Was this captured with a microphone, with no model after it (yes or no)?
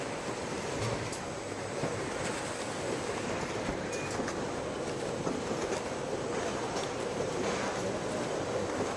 yes